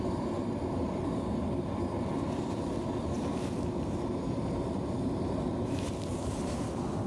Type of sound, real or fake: real